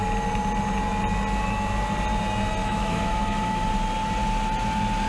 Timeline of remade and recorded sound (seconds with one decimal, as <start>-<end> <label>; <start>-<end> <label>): 0.0-2.6 recorded; 2.6-3.7 remade; 3.7-5.1 recorded